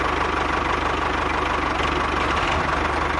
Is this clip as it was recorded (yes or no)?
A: yes